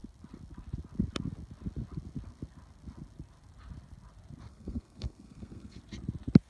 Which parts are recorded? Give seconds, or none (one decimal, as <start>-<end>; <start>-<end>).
0.0-4.5; 5.8-6.5